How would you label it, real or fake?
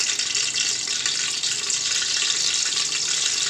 real